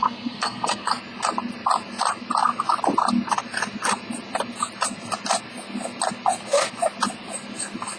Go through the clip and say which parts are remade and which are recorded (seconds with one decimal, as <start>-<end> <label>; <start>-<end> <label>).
0.0-0.9 remade; 0.9-8.0 recorded